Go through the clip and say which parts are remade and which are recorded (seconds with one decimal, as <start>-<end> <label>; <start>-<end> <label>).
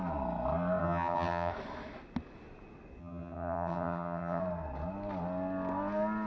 0.0-0.8 recorded; 0.8-1.5 remade; 1.5-3.0 recorded; 3.0-4.4 remade; 4.4-6.3 recorded